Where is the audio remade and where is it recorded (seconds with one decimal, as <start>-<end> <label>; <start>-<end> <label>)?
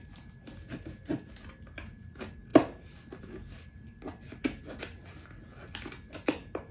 0.0-6.7 recorded